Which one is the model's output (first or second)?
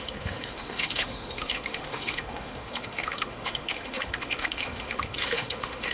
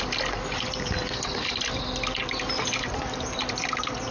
first